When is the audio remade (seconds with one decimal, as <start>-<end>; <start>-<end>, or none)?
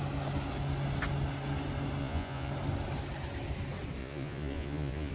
2.0-2.5; 4.0-5.1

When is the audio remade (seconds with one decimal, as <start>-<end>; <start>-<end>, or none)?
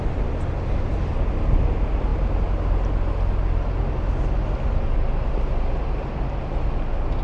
none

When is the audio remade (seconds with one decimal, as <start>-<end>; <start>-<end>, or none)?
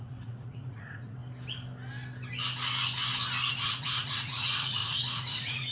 0.0-1.2; 3.5-5.7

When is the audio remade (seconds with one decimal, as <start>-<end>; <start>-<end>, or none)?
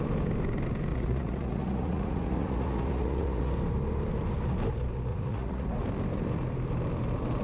0.9-3.5; 5.1-5.7